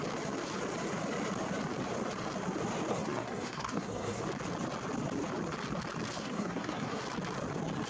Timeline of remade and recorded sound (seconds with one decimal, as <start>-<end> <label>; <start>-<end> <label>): 0.0-2.9 recorded; 2.9-4.2 remade; 4.2-6.2 recorded; 6.2-7.0 remade; 7.0-7.9 recorded